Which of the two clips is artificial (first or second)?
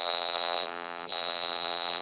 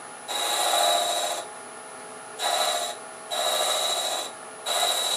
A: first